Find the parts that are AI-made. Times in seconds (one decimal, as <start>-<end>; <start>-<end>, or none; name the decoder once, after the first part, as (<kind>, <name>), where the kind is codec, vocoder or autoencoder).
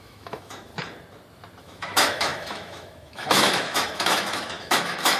0.0-0.7 (autoencoder, DAC-VAE); 1.6-5.2